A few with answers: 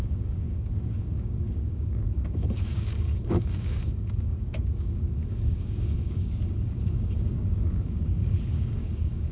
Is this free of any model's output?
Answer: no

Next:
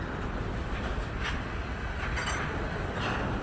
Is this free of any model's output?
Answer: yes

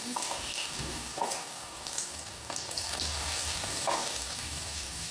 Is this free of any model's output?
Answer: no